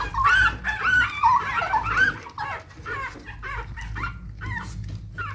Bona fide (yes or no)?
yes